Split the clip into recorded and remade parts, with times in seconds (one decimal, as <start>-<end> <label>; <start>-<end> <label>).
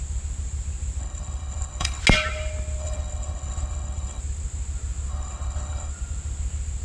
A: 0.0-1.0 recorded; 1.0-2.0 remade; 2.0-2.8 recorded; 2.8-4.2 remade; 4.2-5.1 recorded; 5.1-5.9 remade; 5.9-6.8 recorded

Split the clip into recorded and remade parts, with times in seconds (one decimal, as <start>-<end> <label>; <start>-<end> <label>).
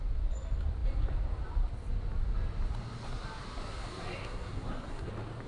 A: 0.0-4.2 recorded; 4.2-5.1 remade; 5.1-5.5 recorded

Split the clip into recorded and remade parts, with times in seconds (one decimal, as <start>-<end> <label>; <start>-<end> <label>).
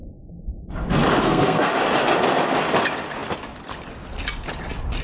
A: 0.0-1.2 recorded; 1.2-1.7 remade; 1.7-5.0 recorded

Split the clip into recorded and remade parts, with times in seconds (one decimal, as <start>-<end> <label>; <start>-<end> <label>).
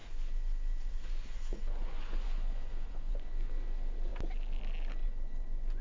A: 0.0-3.5 remade; 3.5-5.0 recorded; 5.0-5.8 remade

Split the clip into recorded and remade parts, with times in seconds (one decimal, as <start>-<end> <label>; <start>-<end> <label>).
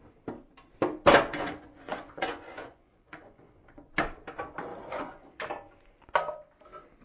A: 0.0-1.3 recorded; 1.3-3.9 remade; 3.9-4.7 recorded; 4.7-5.4 remade; 5.4-7.0 recorded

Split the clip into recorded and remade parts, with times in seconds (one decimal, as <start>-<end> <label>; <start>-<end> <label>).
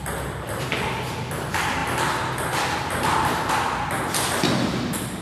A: 0.0-5.2 recorded